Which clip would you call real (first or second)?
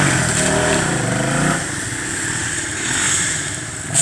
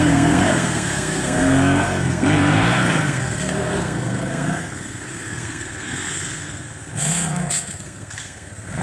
first